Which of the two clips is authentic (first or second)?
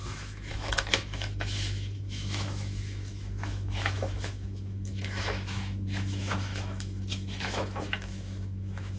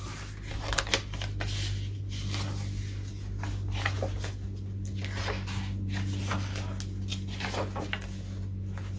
second